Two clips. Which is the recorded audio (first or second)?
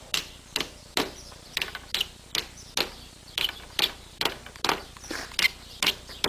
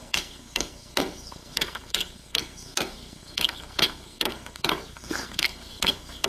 first